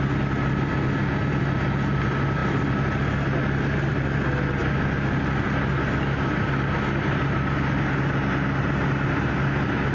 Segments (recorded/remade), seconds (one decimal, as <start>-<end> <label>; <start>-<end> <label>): 0.0-9.9 recorded

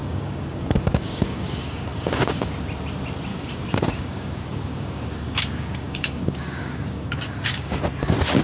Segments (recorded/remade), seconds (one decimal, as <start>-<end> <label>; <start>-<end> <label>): 0.0-2.5 remade; 2.5-3.3 recorded; 3.3-7.8 remade; 7.8-8.4 recorded

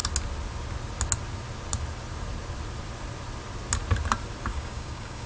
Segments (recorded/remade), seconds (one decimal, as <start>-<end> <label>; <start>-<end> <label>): 0.0-4.5 recorded; 4.5-5.3 remade

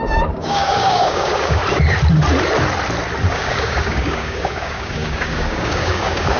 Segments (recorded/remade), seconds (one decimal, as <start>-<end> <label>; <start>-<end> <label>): 0.0-1.6 remade; 1.6-3.3 recorded; 3.3-6.4 remade